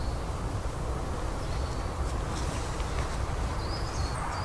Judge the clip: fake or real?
real